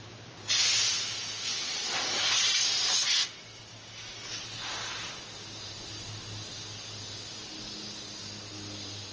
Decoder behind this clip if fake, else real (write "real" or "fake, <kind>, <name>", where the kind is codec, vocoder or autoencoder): real